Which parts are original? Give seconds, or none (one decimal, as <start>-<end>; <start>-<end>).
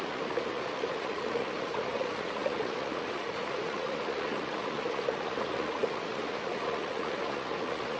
none